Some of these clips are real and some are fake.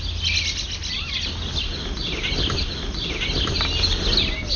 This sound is real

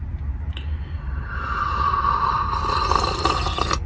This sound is real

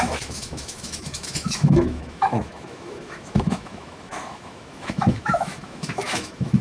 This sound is fake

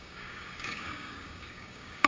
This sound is fake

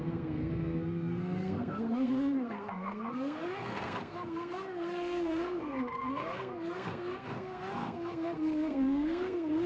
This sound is fake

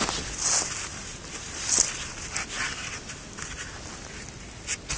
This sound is real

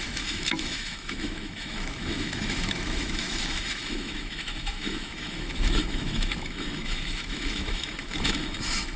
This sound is fake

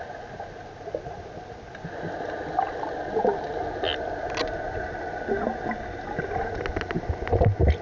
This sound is real